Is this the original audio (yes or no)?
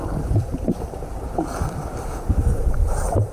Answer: no